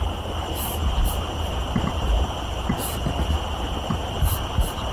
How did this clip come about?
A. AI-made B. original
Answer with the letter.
B